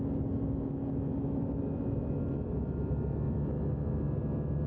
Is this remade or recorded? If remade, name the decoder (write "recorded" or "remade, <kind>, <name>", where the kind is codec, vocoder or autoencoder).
recorded